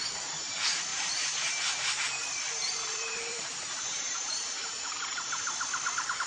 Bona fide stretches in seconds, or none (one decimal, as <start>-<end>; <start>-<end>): 0.0-0.9; 2.1-2.6; 5.5-6.3